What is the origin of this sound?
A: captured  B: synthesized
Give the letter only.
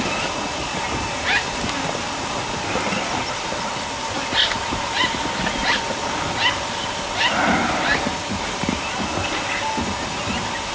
A